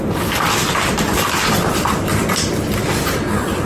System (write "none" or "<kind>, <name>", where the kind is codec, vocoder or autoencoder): none